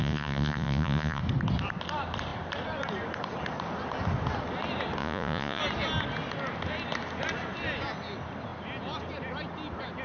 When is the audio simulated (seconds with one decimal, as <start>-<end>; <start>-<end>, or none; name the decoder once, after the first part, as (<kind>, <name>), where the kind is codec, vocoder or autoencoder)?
0.0-1.2 (vocoder, Vocos); 5.0-5.6